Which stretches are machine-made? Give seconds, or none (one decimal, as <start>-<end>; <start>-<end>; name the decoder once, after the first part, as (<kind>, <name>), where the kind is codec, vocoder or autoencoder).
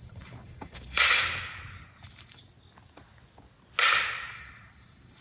0.0-1.2 (vocoder, BigVGAN v2); 2.0-2.4; 4.3-5.2